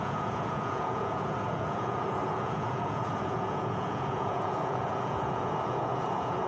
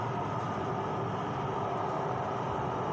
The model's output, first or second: first